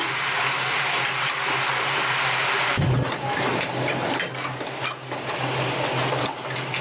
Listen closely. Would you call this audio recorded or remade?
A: recorded